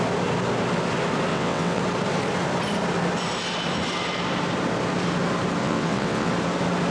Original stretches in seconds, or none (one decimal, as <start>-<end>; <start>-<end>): 0.0-1.3; 1.8-5.6; 6.3-6.9